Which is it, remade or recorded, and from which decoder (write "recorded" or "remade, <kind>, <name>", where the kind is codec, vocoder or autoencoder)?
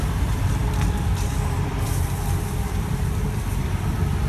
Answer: remade, vocoder, BigVGAN v2